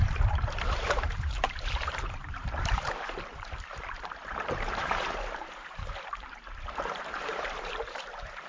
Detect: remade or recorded remade